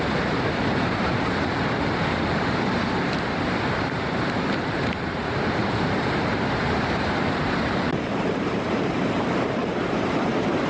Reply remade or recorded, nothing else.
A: remade